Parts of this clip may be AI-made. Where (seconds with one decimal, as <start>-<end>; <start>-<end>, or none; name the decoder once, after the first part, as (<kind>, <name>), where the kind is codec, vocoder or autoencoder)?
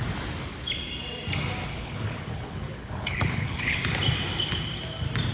1.7-3.8 (codec, HILCodec)